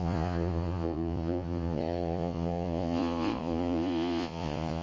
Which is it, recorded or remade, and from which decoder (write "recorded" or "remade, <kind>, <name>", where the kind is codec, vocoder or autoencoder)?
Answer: remade, vocoder, Vocos